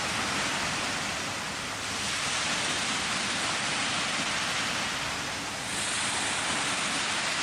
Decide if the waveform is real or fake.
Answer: real